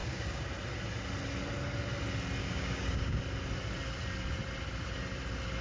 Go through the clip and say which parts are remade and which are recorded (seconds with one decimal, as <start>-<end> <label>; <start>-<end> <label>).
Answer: 0.0-0.5 remade; 0.5-2.4 recorded; 2.4-3.2 remade; 3.2-5.6 recorded